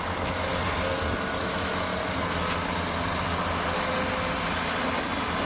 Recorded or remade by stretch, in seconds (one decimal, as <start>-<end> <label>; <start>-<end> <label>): 0.0-0.5 remade; 0.5-1.4 recorded; 1.4-1.9 remade; 1.9-5.5 recorded